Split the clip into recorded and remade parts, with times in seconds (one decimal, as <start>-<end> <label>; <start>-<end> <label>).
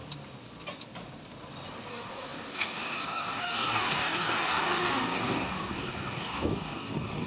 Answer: 0.0-1.9 recorded; 1.9-7.3 remade